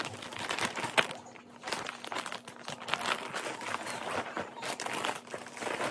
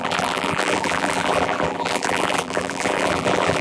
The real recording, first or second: first